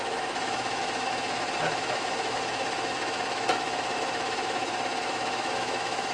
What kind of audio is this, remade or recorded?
remade